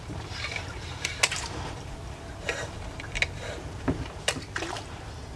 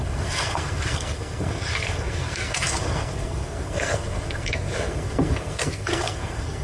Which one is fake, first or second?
second